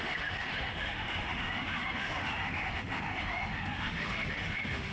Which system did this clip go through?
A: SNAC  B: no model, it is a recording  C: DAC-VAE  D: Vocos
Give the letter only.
C